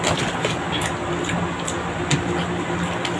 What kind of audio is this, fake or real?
real